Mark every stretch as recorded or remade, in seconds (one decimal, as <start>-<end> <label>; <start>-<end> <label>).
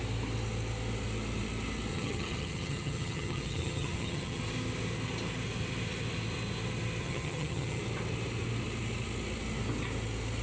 0.0-1.9 recorded; 1.9-4.4 remade; 4.4-7.0 recorded; 7.0-7.8 remade; 7.8-10.4 recorded